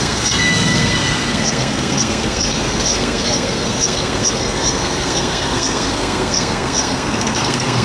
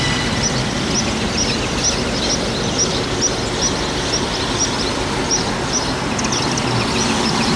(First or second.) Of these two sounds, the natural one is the second